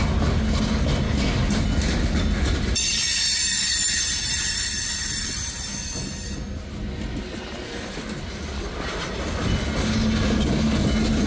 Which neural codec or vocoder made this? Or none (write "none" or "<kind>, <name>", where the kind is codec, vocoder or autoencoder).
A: none